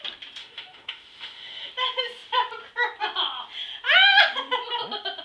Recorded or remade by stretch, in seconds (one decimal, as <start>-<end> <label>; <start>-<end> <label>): 0.0-0.4 recorded; 0.4-1.7 remade; 1.7-5.2 recorded